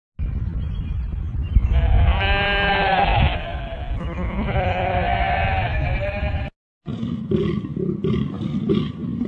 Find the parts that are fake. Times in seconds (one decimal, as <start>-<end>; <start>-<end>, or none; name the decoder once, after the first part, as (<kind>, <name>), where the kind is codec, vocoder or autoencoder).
none